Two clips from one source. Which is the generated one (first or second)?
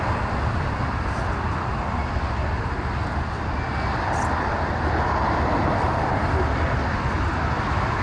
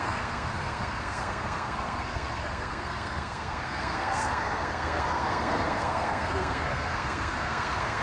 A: second